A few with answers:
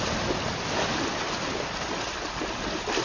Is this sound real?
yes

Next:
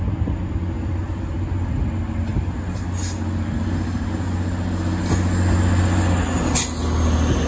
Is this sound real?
yes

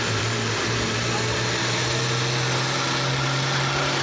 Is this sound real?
yes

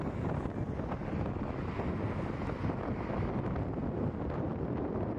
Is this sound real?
yes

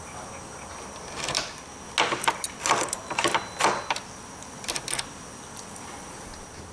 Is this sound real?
yes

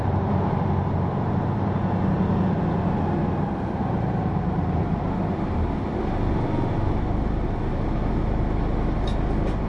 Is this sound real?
yes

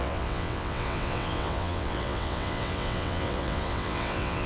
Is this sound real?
no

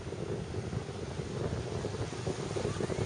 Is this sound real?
yes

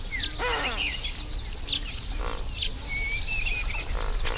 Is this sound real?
yes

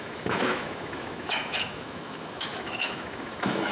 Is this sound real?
no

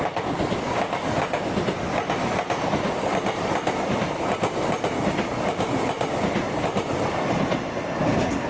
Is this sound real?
yes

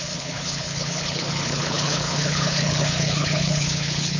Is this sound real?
no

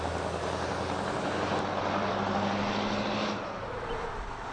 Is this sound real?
yes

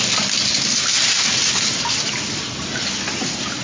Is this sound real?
yes